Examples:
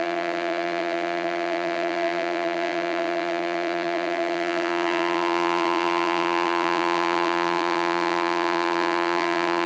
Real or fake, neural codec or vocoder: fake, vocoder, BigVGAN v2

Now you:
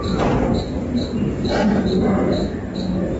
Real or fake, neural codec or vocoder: real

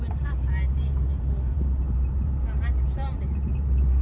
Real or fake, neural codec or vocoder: fake, vocoder, BigVGAN v2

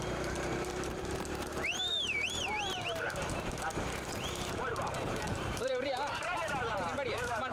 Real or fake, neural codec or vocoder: fake, vocoder, BigVGAN v2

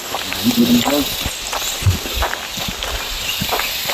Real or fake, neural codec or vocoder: real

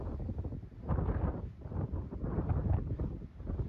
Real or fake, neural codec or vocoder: real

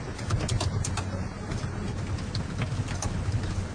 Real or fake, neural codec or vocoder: real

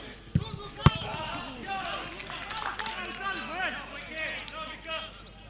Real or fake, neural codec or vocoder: real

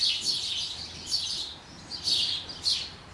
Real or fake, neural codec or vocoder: real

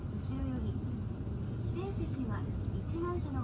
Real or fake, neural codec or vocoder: real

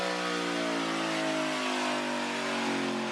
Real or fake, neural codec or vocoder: real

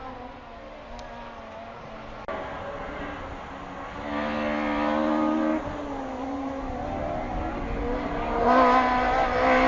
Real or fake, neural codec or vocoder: real